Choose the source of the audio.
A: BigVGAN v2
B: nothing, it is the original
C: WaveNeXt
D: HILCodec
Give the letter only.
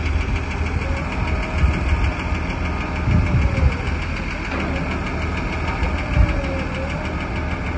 B